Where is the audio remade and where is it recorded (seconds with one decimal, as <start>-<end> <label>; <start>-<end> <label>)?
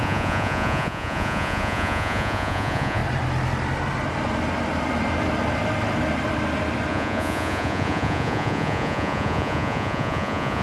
0.0-3.0 remade; 3.0-6.9 recorded; 6.9-10.6 remade